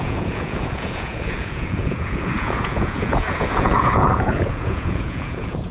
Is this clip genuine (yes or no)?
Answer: no